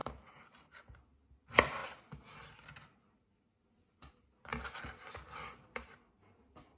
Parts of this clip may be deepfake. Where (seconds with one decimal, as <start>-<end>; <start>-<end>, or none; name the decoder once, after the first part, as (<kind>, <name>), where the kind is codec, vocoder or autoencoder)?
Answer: none